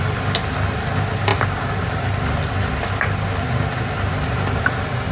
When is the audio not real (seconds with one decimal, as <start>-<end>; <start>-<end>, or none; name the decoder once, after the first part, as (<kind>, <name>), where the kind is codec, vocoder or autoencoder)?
none